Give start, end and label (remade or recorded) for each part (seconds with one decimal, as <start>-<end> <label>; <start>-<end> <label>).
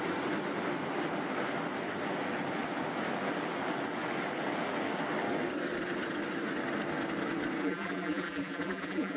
0.0-7.6 recorded; 7.6-9.2 remade